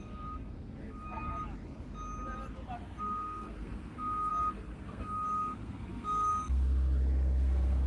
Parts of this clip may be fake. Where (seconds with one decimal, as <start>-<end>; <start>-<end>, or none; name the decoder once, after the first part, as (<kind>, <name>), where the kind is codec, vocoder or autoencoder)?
0.0-1.3 (codec, SNAC); 3.0-7.9